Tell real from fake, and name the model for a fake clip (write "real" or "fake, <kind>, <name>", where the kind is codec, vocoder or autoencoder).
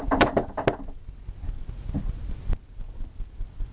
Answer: real